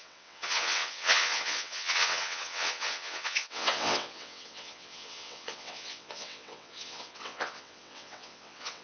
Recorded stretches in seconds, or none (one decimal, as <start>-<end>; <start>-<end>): none